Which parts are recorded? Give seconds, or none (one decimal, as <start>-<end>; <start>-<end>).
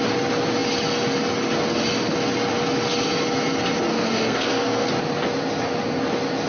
0.0-3.9; 4.9-6.5